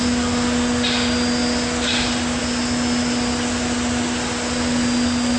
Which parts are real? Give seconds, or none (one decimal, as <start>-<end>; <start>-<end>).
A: 0.0-5.4